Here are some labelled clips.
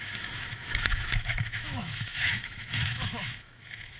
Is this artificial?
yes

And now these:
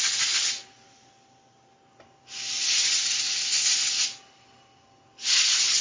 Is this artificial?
no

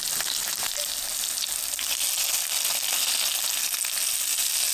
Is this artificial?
no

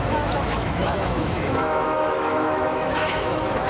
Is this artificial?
yes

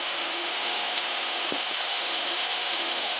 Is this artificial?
yes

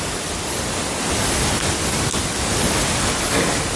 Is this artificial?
no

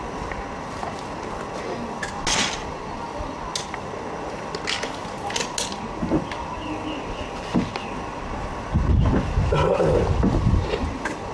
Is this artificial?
no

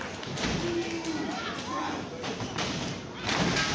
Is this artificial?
no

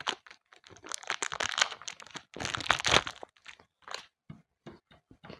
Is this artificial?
no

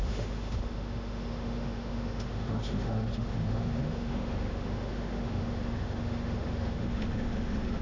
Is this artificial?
yes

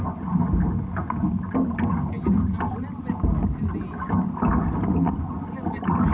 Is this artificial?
no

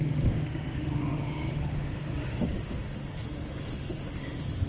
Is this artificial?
yes